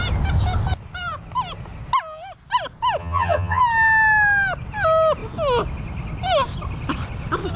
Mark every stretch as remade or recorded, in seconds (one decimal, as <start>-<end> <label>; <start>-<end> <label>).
0.0-3.0 recorded; 3.0-3.6 remade; 3.6-7.6 recorded